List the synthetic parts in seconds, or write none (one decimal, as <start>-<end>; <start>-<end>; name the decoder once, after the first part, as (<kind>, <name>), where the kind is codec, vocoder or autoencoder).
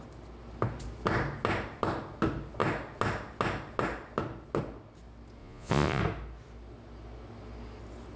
5.4-6.0 (vocoder, Vocos)